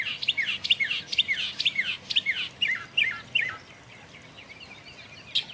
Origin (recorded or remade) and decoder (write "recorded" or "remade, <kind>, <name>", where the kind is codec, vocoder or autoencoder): recorded